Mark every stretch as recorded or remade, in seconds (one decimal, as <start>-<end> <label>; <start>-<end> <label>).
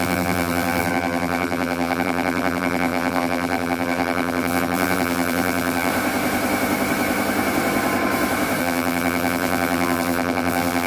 0.0-5.9 remade; 5.9-8.6 recorded; 8.6-10.9 remade